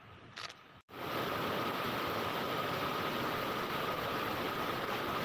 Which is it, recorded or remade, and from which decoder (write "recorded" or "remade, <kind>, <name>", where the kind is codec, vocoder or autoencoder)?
recorded